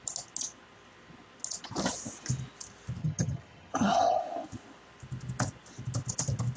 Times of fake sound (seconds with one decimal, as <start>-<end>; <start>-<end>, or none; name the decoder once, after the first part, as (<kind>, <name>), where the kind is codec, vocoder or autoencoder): 3.0-4.2 (vocoder, HiFi-GAN)